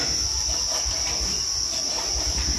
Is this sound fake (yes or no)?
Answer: no